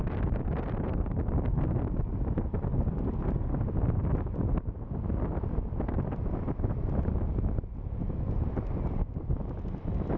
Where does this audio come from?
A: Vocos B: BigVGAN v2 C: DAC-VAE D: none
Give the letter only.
D